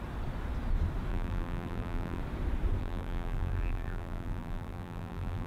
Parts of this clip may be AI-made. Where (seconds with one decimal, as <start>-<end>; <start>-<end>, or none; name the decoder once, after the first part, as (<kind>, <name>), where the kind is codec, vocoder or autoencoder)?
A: 1.1-2.2 (vocoder, BigVGAN v2); 2.8-5.5